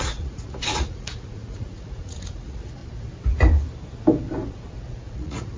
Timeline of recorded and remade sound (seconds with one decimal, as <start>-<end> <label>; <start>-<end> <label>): 0.0-2.8 remade; 2.8-4.9 recorded; 4.9-5.6 remade